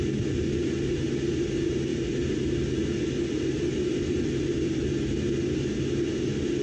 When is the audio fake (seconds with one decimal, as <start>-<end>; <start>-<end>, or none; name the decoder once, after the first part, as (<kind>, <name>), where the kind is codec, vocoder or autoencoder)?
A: none